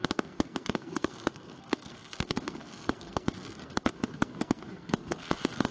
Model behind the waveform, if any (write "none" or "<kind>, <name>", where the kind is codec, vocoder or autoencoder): codec, SNAC